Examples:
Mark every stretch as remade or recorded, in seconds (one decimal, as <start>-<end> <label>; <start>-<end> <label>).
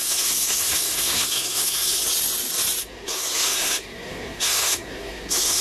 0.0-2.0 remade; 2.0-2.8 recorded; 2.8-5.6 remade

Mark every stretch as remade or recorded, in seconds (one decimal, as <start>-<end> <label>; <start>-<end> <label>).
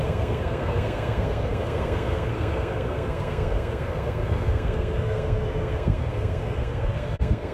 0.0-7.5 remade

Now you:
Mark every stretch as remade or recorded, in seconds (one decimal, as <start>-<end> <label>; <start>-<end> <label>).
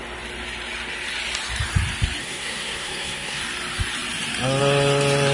0.0-2.2 recorded; 2.2-3.4 remade; 3.4-5.3 recorded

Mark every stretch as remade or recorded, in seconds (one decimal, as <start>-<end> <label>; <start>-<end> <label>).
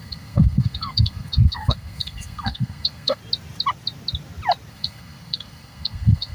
0.0-3.2 remade; 3.2-4.7 recorded; 4.7-6.3 remade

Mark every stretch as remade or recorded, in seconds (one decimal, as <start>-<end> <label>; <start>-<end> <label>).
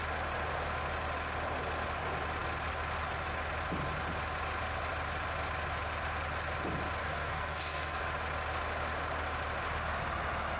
0.0-7.0 recorded; 7.0-8.0 remade; 8.0-10.6 recorded